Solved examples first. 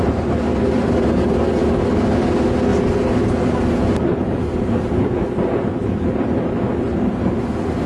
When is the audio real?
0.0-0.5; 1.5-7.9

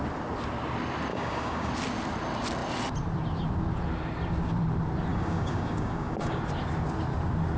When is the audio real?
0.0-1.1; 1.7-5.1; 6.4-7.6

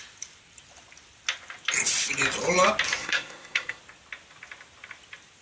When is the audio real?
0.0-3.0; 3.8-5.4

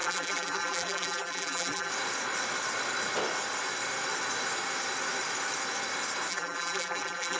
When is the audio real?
1.9-6.3

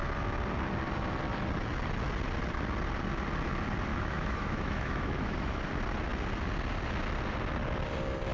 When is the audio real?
0.0-3.9; 5.6-8.3

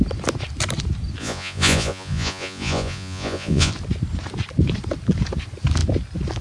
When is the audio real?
0.0-1.2; 3.7-6.4

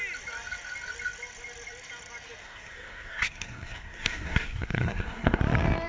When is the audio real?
0.0-2.4; 5.4-5.9

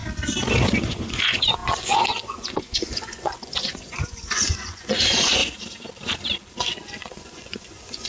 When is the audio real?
0.0-0.8; 5.4-6.6